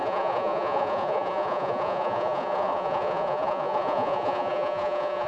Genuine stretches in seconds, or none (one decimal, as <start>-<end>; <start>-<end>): none

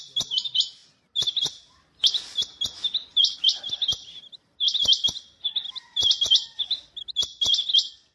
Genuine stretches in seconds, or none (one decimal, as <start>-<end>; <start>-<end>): 0.0-8.1

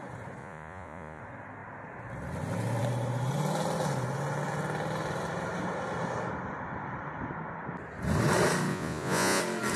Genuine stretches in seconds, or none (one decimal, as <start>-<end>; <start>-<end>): 0.0-0.4; 1.2-8.7; 9.4-9.8

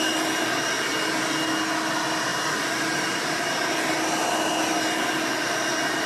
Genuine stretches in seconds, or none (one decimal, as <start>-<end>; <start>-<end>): 0.0-2.3; 3.4-6.1

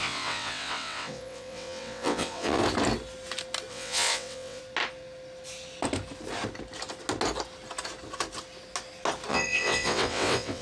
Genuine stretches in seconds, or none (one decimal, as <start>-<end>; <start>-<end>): 2.6-3.7; 4.6-9.3

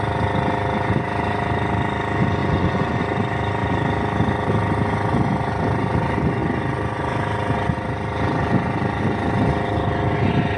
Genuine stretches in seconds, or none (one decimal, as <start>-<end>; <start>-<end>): 0.0-2.4; 3.0-10.6

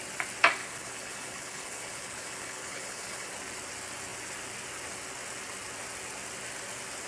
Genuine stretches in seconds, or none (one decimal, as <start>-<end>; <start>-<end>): 0.0-0.6; 3.3-7.1